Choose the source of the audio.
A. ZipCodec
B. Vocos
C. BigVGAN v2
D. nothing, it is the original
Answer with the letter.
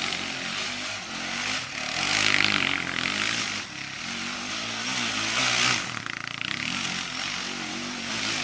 D